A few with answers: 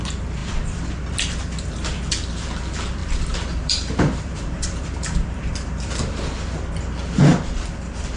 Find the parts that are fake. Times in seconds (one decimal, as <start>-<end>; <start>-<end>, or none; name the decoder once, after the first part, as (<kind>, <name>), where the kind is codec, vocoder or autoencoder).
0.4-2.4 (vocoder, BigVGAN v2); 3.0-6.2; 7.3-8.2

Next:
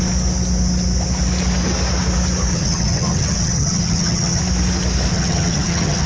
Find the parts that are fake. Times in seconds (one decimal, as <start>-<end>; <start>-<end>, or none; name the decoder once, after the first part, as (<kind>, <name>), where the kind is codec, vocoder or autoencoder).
2.5-4.4 (vocoder, HiFi-GAN); 5.1-6.1

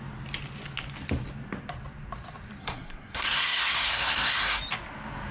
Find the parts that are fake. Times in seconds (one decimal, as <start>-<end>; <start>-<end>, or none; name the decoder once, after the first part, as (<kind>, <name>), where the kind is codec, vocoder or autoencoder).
2.6-4.6 (codec, SNAC)

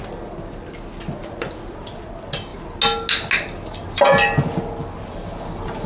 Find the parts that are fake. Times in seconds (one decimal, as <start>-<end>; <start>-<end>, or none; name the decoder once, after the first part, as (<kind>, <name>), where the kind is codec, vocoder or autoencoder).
none

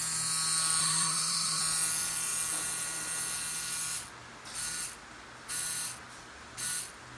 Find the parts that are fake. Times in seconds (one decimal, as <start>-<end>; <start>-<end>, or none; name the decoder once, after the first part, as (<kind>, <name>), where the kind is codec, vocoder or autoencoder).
0.8-1.6 (codec, SNAC)

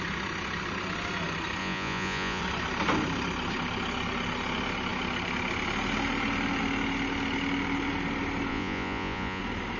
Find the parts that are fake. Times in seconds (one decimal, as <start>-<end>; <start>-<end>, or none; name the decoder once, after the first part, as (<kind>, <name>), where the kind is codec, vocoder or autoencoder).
1.6-2.4 (vocoder, Vocos); 8.5-9.4

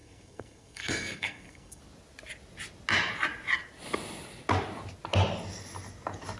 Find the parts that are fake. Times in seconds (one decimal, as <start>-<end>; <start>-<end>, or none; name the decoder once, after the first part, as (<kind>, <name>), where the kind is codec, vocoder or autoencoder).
0.0-1.8 (codec, SNAC)